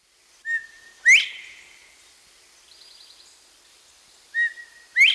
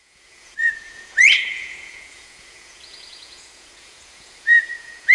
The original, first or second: first